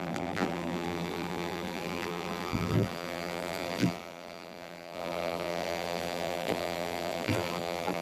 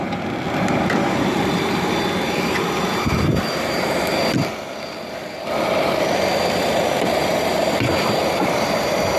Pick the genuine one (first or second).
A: second